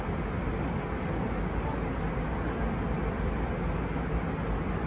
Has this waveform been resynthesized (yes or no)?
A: no